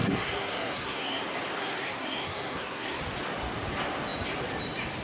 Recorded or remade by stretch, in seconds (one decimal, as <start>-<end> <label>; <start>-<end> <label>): 0.0-1.2 remade; 1.2-1.6 recorded; 1.6-3.0 remade; 3.0-5.0 recorded